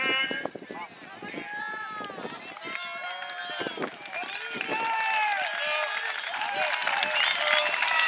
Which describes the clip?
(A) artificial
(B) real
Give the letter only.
B